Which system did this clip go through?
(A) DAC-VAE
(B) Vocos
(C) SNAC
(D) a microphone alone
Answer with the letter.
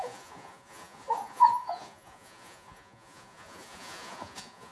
B